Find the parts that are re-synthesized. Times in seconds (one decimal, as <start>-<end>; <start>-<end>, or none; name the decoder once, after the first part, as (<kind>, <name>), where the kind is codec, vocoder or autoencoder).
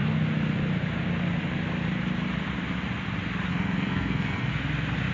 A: 3.5-4.5 (codec, SNAC)